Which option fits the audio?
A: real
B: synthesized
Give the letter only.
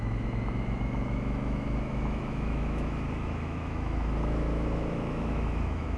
B